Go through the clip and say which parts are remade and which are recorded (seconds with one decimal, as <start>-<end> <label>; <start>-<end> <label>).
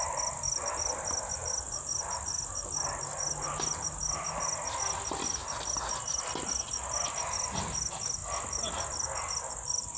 0.0-8.2 recorded; 8.2-9.4 remade; 9.4-10.0 recorded